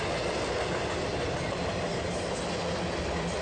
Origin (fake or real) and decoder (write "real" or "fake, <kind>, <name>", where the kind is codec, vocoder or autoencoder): real